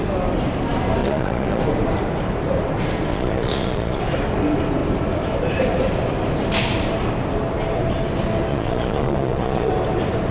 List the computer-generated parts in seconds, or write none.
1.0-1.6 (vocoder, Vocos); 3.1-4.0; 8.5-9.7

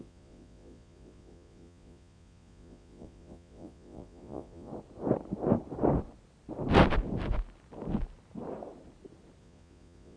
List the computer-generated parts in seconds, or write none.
0.0-4.7 (vocoder, Vocos); 9.4-10.2

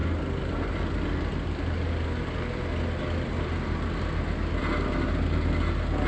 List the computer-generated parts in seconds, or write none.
none